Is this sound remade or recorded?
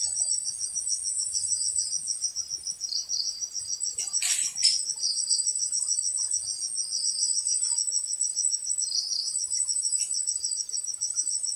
recorded